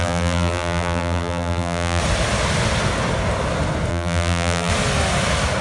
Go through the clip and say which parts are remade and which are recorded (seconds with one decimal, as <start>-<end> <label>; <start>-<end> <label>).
0.0-2.0 remade; 2.0-3.9 recorded; 3.9-4.7 remade; 4.7-5.6 recorded